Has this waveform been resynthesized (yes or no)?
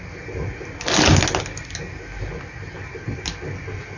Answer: no